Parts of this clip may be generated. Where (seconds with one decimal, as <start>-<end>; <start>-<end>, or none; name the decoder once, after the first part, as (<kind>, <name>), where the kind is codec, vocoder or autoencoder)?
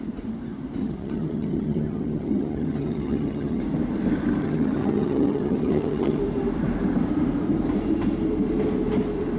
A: 0.8-3.6 (vocoder, HiFi-GAN); 4.4-6.2